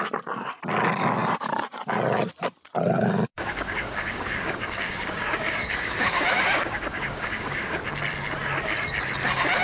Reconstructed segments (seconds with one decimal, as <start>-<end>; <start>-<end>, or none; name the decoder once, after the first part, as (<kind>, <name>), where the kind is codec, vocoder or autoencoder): 3.3-7.8 (codec, DAC)